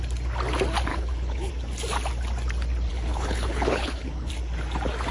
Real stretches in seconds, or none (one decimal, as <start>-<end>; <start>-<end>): 0.0-0.9; 1.5-2.9; 4.3-5.1